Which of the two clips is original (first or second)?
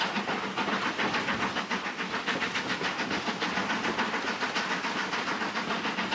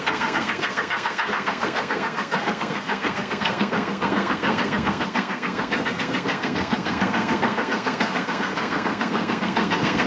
first